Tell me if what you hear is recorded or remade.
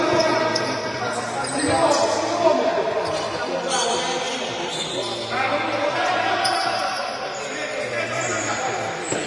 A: recorded